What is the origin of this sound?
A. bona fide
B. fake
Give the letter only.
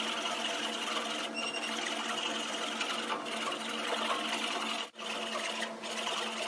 A